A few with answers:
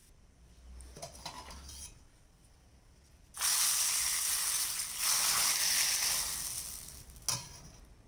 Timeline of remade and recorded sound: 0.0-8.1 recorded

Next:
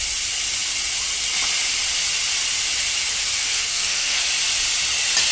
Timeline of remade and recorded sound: 0.0-3.5 recorded; 3.5-4.2 remade; 4.2-5.3 recorded